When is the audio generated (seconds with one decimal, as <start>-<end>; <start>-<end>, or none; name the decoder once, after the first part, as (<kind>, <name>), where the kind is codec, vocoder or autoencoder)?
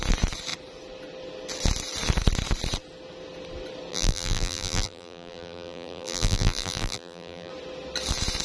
3.9-7.5 (vocoder, BigVGAN v2)